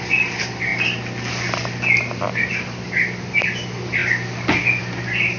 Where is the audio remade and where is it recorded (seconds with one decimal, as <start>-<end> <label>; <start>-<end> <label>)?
0.0-5.4 recorded